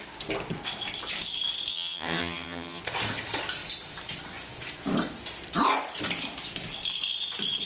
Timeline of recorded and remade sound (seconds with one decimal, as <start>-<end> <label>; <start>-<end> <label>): 0.0-1.7 recorded; 1.7-2.8 remade; 2.8-7.7 recorded